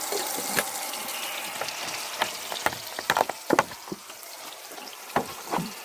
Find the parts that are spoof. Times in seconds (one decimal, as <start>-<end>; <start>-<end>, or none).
4.0-5.1